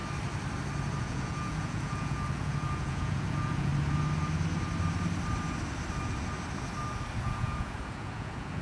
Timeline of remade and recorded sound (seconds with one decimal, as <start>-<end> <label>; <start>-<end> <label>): 0.0-1.0 recorded; 1.0-3.7 remade; 3.7-7.2 recorded; 7.2-8.6 remade